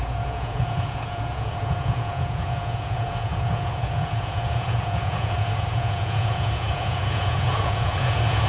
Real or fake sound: fake